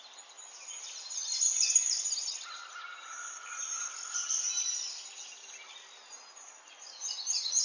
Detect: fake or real real